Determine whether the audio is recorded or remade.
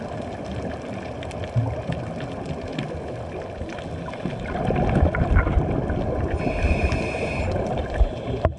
recorded